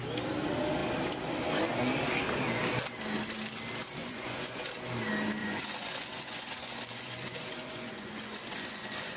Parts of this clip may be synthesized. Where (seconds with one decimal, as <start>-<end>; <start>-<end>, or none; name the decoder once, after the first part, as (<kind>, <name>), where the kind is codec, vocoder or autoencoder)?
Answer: 4.0-4.7 (vocoder, Vocos); 5.4-9.2